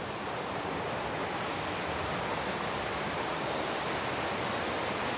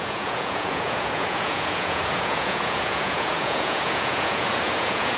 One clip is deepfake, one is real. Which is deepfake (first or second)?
second